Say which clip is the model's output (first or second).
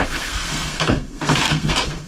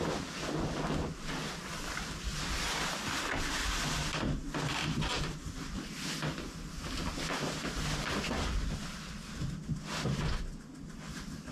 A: first